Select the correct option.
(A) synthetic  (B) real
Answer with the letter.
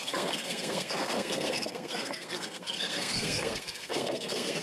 A